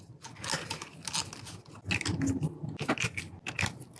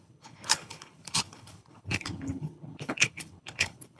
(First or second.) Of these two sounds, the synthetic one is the second